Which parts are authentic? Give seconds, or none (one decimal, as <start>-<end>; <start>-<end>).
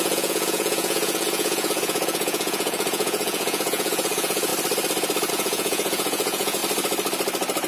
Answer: 4.5-5.3; 6.6-7.7